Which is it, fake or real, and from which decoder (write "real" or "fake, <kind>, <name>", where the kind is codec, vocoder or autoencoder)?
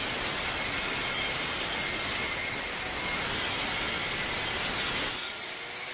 real